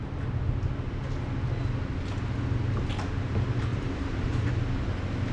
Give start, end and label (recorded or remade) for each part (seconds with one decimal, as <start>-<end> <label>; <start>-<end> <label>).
0.0-3.7 recorded; 3.7-4.5 remade; 4.5-5.3 recorded